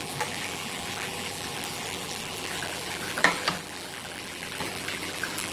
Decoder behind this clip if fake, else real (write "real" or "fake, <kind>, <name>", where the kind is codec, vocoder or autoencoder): fake, vocoder, BigVGAN v2